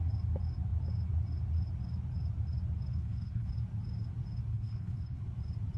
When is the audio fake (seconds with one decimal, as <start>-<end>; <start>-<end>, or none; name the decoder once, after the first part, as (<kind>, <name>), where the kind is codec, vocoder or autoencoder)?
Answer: 2.9-3.5 (codec, HILCodec); 4.5-5.2